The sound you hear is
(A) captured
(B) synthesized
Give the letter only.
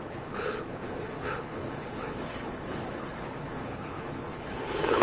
B